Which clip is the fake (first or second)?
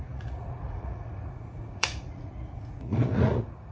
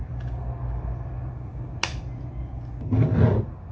first